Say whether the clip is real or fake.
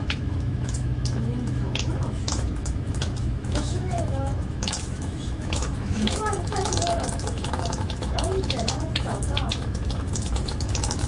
fake